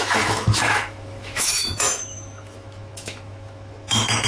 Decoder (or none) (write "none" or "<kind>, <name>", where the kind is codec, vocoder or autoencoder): autoencoder, DAC-VAE